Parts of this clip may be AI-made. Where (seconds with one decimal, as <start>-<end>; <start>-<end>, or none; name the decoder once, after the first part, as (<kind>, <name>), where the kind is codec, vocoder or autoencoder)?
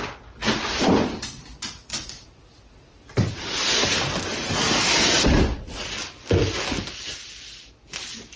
1.5-4.0 (vocoder, BigVGAN v2); 6.4-7.6